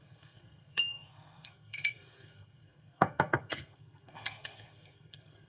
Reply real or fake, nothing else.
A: fake